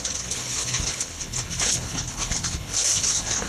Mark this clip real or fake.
fake